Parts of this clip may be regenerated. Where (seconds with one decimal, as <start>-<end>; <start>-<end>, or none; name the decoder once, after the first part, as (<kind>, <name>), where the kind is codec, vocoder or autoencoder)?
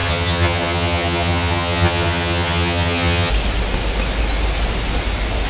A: 0.0-3.3 (vocoder, HiFi-GAN)